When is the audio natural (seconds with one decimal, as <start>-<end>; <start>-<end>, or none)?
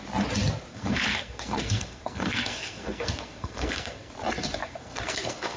0.0-0.7; 4.1-4.6